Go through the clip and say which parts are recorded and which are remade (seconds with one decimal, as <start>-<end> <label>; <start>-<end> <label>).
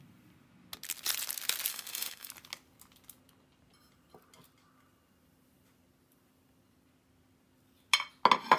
0.0-1.7 recorded; 1.7-2.3 remade; 2.3-8.6 recorded